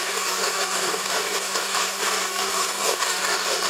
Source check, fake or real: fake